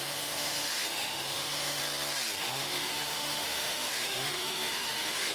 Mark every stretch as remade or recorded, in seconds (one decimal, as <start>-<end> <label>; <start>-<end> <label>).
0.0-1.8 remade; 1.8-2.4 recorded; 2.4-5.3 remade